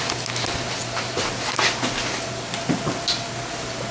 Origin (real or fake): real